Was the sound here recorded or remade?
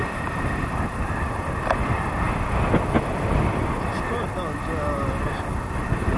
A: recorded